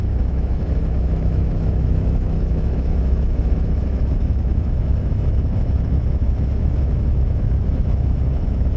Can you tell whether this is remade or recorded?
remade